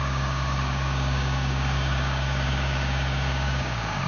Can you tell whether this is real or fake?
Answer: fake